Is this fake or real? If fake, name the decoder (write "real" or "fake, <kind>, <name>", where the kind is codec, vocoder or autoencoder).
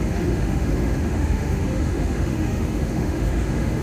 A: fake, autoencoder, DAC-VAE